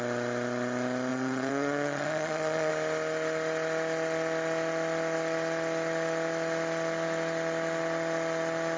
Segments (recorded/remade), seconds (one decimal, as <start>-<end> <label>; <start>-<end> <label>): 0.0-1.1 recorded; 1.1-2.7 remade; 2.7-8.8 recorded